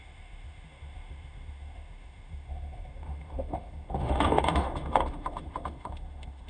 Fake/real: fake